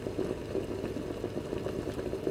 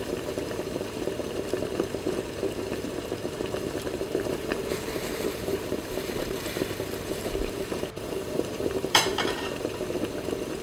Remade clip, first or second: second